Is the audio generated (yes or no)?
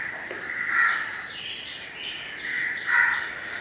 no